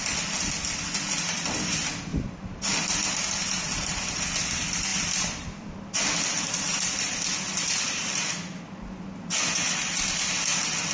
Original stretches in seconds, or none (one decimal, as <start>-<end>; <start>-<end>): 0.0-2.1; 3.3-4.9; 7.2-10.9